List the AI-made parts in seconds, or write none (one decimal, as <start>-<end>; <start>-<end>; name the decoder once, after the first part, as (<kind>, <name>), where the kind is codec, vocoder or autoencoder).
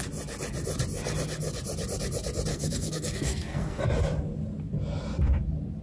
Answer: 2.5-3.8 (codec, SNAC)